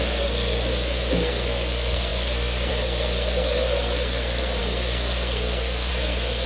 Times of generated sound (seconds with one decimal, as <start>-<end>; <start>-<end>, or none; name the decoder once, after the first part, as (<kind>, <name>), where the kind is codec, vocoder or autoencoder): 0.0-6.5 (codec, SNAC)